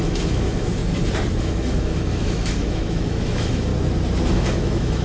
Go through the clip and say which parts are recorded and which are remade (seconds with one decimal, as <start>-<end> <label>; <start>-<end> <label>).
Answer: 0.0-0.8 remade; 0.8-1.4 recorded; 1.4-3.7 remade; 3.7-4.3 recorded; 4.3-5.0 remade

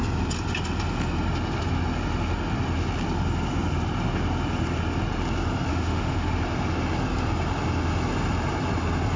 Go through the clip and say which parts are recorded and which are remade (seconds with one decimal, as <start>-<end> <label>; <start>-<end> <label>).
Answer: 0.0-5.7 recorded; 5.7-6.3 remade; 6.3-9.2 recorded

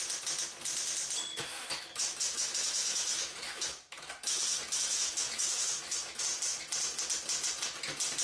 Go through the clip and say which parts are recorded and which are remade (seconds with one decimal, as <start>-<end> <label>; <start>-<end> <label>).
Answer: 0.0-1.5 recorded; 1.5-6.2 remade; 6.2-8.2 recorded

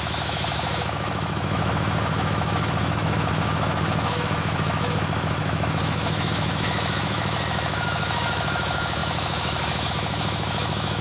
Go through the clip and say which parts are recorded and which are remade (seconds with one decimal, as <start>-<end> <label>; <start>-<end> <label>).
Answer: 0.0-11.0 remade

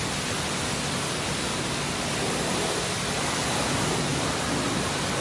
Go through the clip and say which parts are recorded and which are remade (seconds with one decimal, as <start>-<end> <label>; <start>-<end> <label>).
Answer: 0.0-5.2 recorded

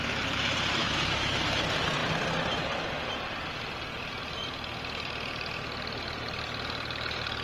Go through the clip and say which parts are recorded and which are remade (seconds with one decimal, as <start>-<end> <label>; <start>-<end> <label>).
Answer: 0.0-0.8 recorded; 0.8-1.6 remade; 1.6-7.4 recorded

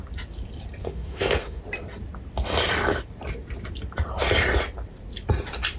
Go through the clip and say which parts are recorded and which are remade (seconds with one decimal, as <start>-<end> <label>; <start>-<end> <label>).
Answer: 0.0-0.8 recorded; 0.8-1.6 remade; 1.6-5.8 recorded

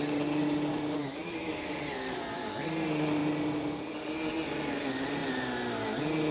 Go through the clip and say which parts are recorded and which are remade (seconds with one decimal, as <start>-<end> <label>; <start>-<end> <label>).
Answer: 0.0-1.0 recorded; 1.0-1.7 remade; 1.7-6.3 recorded